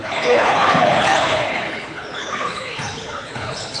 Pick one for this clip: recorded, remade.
remade